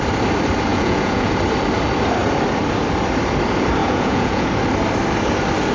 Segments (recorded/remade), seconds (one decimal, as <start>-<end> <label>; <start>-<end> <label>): 0.0-0.7 recorded; 0.7-1.3 remade; 1.3-3.8 recorded; 3.8-4.5 remade; 4.5-5.7 recorded